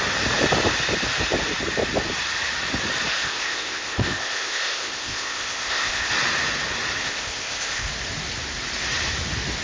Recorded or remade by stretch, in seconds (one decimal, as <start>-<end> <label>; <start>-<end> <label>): 0.0-3.1 recorded; 3.1-6.1 remade; 6.1-7.0 recorded; 7.0-7.9 remade; 7.9-9.6 recorded